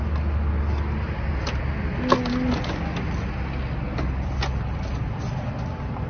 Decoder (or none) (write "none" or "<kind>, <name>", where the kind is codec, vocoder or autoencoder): none